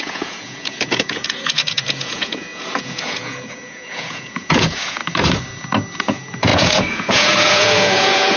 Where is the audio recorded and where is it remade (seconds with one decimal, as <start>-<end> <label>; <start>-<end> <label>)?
0.0-5.0 remade; 5.0-6.0 recorded; 6.0-8.4 remade